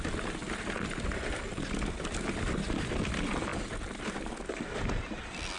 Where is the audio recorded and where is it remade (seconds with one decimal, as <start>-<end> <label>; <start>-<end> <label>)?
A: 0.0-5.6 recorded